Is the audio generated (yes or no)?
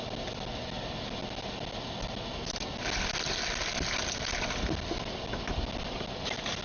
no